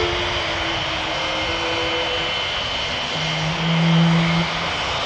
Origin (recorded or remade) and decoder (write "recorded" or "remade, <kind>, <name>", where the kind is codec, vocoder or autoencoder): recorded